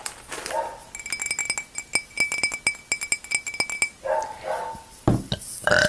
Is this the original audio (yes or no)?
yes